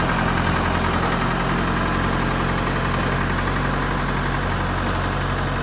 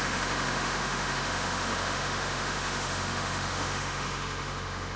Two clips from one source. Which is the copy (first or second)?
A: second